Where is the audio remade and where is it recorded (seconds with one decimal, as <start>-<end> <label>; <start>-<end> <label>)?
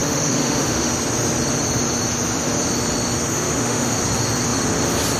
0.0-0.9 remade; 0.9-3.3 recorded; 3.3-4.0 remade; 4.0-5.2 recorded